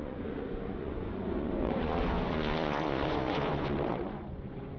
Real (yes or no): no